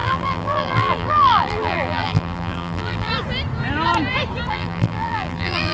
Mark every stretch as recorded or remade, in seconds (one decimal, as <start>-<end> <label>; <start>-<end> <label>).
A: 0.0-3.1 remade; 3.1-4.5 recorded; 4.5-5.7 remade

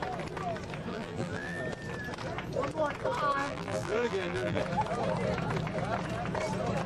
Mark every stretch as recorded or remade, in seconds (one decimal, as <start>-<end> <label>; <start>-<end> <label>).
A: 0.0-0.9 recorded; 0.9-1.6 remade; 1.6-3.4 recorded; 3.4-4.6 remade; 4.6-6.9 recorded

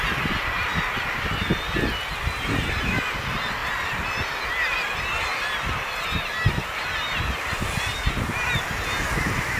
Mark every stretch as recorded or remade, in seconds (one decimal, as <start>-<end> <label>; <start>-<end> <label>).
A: 0.0-9.6 recorded